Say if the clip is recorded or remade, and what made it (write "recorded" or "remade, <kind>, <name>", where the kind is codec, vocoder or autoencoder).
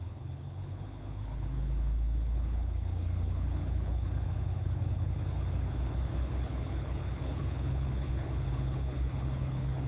remade, codec, HILCodec